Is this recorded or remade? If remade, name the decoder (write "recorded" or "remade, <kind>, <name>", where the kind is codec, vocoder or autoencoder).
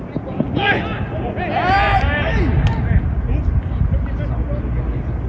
recorded